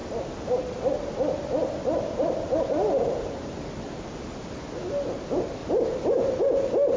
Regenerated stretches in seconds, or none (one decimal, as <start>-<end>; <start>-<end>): 0.0-4.2; 5.6-6.4